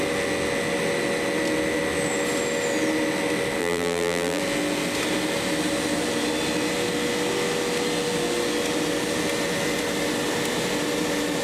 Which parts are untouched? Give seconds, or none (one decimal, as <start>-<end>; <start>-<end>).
0.0-3.6; 4.4-11.4